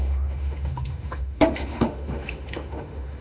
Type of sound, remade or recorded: remade